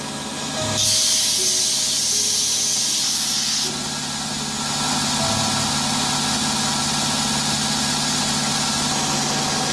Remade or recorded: recorded